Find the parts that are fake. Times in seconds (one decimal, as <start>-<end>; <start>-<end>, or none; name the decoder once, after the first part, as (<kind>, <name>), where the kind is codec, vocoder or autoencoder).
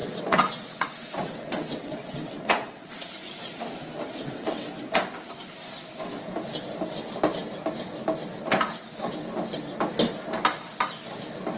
0.0-3.1 (vocoder, WaveNeXt); 4.2-4.8